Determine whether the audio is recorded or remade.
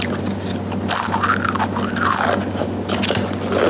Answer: recorded